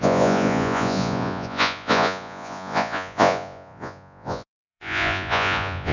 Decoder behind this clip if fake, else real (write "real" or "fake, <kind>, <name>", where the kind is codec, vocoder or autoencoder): fake, vocoder, Vocos